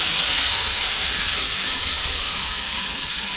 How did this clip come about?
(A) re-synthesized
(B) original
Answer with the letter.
A